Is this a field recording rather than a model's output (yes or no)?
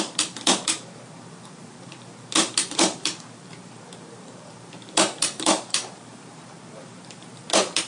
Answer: no